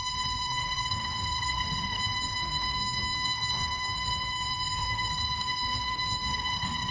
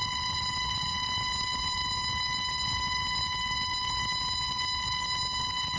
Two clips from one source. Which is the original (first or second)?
second